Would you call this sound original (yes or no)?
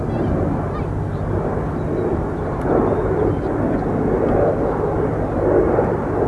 yes